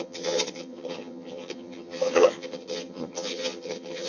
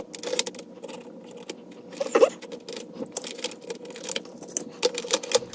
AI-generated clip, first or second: first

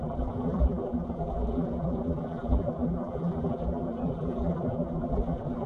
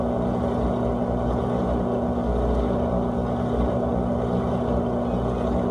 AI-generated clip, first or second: first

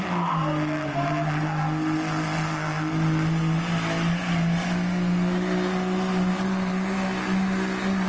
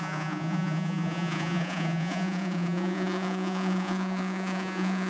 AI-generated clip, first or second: second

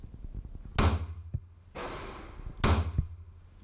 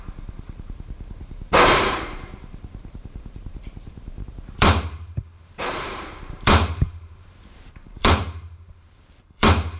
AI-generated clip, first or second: second